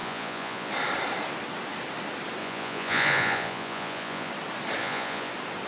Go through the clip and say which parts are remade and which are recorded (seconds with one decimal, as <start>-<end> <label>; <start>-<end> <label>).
0.0-0.7 remade; 0.7-2.4 recorded; 2.4-4.3 remade; 4.3-4.8 recorded; 4.8-5.3 remade; 5.3-5.7 recorded